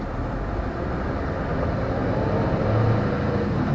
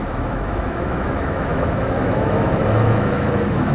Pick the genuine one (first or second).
first